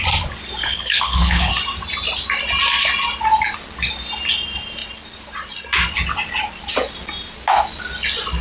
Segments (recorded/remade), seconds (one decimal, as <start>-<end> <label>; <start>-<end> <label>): 0.0-0.6 recorded; 0.6-1.5 remade; 1.5-8.4 recorded